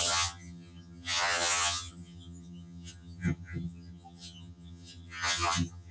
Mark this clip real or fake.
fake